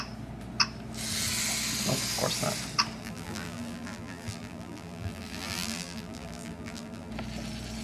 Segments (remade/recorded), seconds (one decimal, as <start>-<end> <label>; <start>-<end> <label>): 0.0-3.0 recorded; 3.0-7.1 remade; 7.1-7.8 recorded